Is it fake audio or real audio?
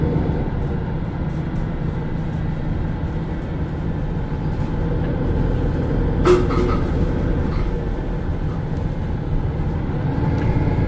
real